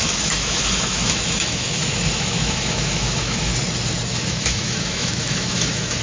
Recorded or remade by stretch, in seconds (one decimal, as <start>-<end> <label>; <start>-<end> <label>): 0.0-3.5 remade; 3.5-4.1 recorded; 4.1-6.0 remade

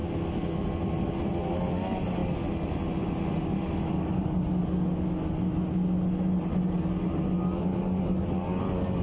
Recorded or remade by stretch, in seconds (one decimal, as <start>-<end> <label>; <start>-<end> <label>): 0.0-0.6 remade; 0.6-9.0 recorded

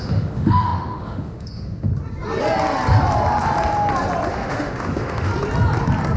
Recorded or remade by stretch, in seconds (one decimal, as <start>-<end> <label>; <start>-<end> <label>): 0.0-1.9 remade; 1.9-4.3 recorded; 4.3-5.3 remade; 5.3-6.2 recorded

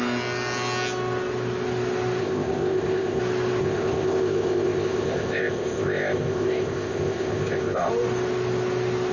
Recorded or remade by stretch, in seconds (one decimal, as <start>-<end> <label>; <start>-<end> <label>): 0.0-2.2 recorded; 2.2-3.2 remade; 3.2-3.6 recorded; 3.6-7.9 remade; 7.9-9.1 recorded